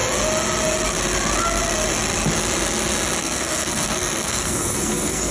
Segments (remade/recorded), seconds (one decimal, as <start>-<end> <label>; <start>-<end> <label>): 0.0-3.2 recorded; 3.2-5.3 remade